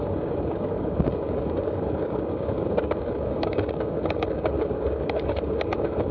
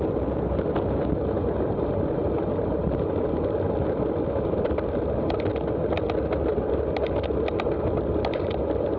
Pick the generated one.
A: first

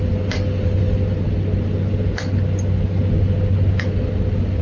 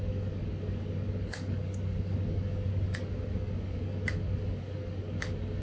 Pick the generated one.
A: second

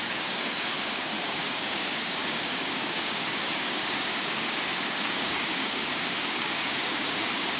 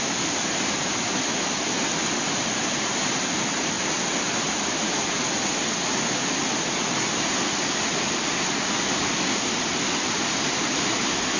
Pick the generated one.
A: first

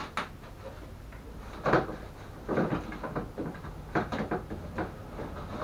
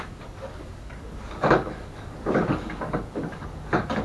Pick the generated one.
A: second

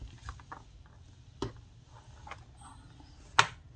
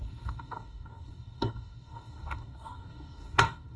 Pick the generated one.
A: second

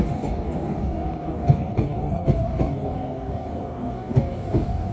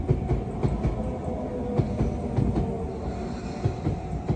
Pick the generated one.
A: first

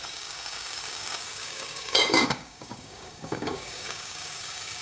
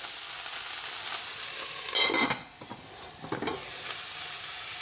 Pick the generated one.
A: first